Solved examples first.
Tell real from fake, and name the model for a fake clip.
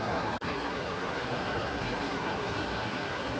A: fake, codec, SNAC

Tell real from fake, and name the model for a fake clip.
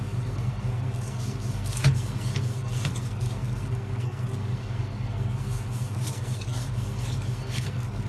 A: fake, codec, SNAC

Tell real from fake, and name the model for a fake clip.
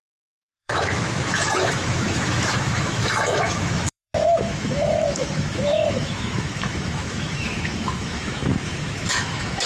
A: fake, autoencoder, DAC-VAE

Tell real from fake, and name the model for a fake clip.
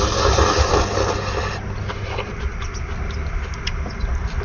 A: real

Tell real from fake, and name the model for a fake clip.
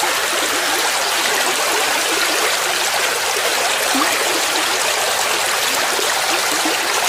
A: real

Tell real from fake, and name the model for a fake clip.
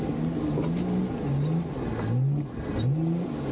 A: real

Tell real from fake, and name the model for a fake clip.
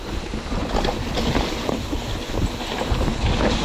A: real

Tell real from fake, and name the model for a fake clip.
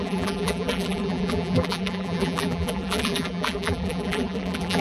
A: fake, vocoder, BigVGAN v2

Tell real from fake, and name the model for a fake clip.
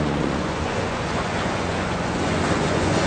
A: fake, vocoder, Vocos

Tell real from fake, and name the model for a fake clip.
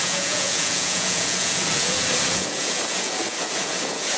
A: fake, vocoder, Vocos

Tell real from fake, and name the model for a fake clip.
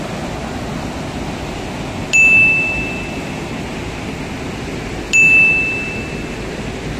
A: real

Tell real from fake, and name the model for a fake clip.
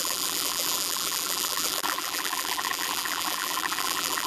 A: fake, vocoder, BigVGAN v2